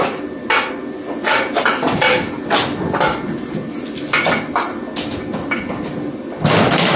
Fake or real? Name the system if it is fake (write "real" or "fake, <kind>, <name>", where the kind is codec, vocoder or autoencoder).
real